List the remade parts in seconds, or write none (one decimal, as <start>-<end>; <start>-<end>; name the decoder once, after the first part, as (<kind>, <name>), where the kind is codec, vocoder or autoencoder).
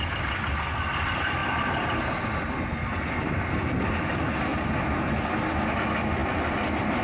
none